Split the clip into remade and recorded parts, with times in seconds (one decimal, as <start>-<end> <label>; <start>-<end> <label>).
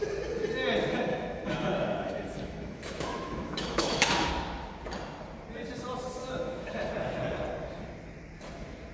0.0-1.1 recorded; 1.1-4.3 remade; 4.3-6.2 recorded; 6.2-6.9 remade; 6.9-8.9 recorded